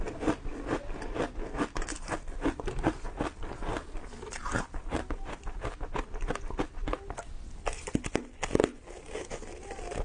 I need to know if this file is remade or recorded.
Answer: recorded